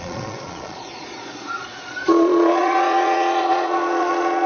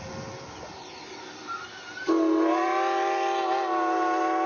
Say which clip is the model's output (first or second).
first